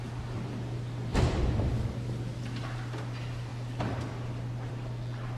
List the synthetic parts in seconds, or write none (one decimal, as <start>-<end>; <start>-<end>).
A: 1.1-1.9